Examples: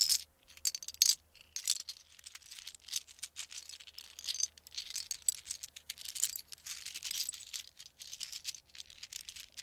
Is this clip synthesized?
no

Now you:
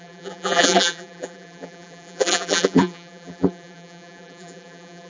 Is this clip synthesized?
yes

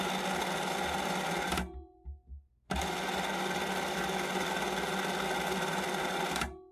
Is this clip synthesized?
no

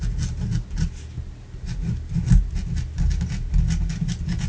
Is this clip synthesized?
no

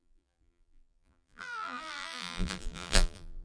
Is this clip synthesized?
yes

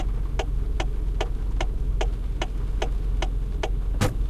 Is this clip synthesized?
no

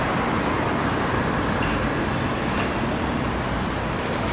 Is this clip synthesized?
no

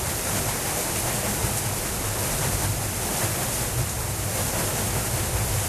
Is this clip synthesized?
yes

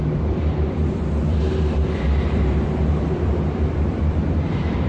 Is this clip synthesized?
yes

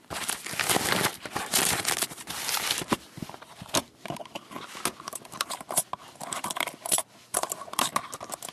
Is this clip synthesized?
no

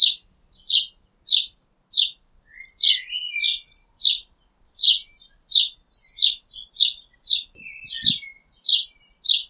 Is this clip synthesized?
no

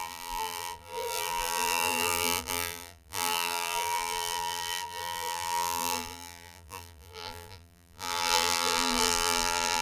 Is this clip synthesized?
yes